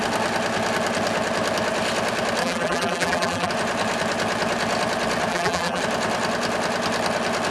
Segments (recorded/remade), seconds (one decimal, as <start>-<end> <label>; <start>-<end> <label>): 0.0-2.4 recorded; 2.4-3.5 remade; 3.5-5.3 recorded; 5.3-5.8 remade; 5.8-7.5 recorded